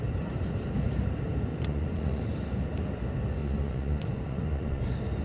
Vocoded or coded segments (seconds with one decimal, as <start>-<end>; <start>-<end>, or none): 1.5-2.2; 3.4-4.8